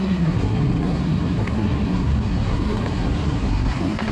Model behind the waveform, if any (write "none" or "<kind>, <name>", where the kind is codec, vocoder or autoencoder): codec, SNAC